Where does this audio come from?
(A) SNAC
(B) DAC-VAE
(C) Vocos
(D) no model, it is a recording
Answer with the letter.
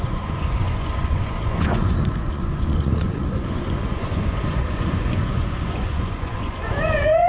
C